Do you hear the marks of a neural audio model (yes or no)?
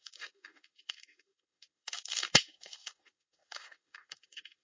yes